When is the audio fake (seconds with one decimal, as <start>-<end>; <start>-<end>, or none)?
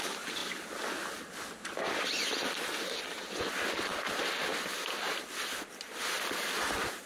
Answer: none